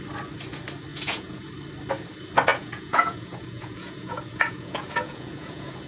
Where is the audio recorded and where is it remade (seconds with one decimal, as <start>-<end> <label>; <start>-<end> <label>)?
0.0-0.9 recorded; 0.9-1.5 remade; 1.5-2.5 recorded; 2.5-5.9 remade